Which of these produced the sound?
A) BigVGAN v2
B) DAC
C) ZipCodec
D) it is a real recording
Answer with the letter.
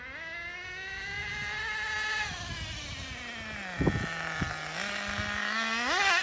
D